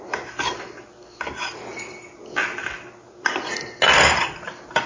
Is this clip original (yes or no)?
yes